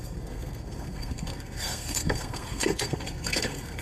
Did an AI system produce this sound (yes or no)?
yes